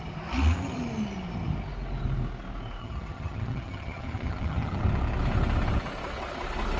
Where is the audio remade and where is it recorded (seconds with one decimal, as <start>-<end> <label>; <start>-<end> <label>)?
0.0-2.8 recorded; 2.8-4.8 remade; 4.8-6.8 recorded

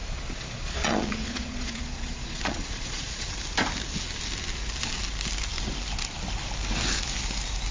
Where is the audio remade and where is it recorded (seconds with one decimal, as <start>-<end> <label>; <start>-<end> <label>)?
0.0-3.4 remade; 3.4-7.7 recorded